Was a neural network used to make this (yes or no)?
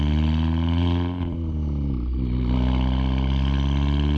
no